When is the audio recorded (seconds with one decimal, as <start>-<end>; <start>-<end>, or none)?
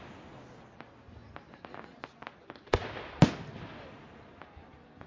0.0-5.1